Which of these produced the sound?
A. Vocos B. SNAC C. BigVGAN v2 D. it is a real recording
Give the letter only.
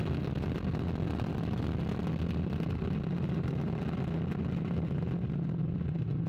D